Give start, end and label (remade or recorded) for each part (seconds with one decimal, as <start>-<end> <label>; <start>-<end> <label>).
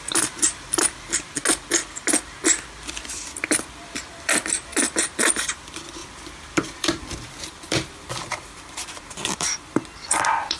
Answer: 0.0-1.4 remade; 1.4-2.9 recorded; 2.9-10.6 remade